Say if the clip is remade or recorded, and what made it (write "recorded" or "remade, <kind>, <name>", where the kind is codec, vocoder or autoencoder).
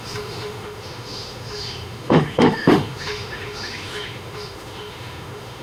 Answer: remade, autoencoder, DAC-VAE